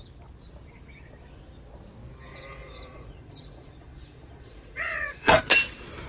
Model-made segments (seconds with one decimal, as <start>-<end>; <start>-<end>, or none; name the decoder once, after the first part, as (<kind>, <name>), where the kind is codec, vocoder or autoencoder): 2.3-5.4 (vocoder, Vocos)

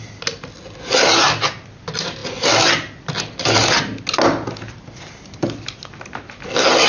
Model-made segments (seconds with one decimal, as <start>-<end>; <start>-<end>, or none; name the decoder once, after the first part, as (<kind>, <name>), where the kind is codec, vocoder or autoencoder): none

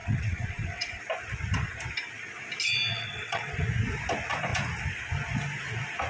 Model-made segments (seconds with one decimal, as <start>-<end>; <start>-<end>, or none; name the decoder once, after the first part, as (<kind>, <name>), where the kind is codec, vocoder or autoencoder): 0.0-1.0 (vocoder, WaveNeXt); 2.9-3.6

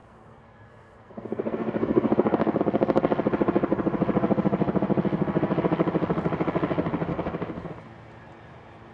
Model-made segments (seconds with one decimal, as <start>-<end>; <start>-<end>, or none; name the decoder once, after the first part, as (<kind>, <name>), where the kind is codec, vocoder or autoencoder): 0.0-2.6 (codec, SNAC); 7.1-7.7

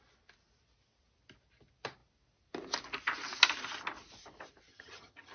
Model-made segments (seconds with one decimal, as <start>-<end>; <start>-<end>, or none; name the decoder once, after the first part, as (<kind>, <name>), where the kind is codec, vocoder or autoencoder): 4.7-5.3 (vocoder, HiFi-GAN)

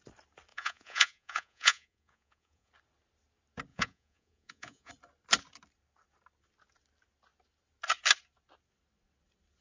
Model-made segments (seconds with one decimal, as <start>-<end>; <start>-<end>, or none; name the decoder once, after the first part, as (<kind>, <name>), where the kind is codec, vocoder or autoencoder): 0.5-2.7 (vocoder, Vocos); 3.7-4.9

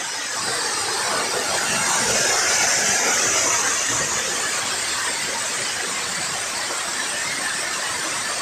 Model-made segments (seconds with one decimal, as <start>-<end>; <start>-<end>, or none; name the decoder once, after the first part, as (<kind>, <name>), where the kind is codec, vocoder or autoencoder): 0.4-1.6 (vocoder, BigVGAN v2); 5.5-7.0